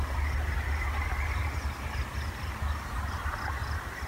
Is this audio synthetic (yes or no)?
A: no